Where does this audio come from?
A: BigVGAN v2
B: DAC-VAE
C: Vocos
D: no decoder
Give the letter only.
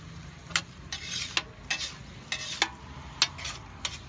D